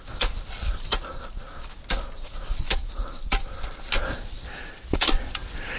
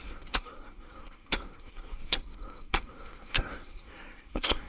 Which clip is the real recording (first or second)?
first